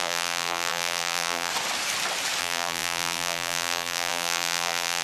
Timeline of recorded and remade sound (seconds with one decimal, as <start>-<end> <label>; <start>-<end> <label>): 0.0-1.5 remade; 1.5-2.4 recorded; 2.4-5.0 remade